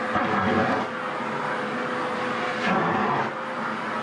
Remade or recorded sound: recorded